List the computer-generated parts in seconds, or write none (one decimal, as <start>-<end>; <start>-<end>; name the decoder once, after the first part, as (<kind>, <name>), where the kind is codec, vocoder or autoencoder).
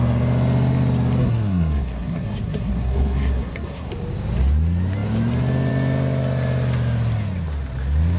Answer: 1.2-3.9 (codec, SNAC)